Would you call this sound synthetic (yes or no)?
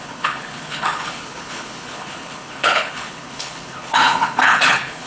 yes